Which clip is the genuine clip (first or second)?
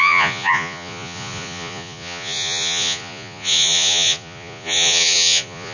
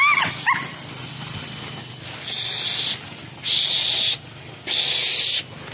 second